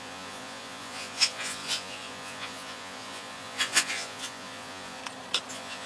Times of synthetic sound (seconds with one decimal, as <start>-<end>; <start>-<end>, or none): 0.0-5.0; 5.5-5.9